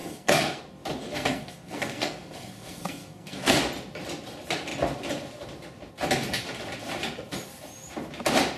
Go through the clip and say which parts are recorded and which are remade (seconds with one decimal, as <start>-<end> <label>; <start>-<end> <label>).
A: 0.0-0.6 remade; 0.6-1.0 recorded; 1.0-3.6 remade; 3.6-8.6 recorded